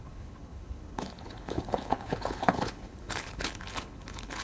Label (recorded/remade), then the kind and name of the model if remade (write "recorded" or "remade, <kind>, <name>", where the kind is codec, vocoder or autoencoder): remade, codec, HILCodec